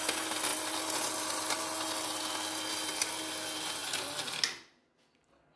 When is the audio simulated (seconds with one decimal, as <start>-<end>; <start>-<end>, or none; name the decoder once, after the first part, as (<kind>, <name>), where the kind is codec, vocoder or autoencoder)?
none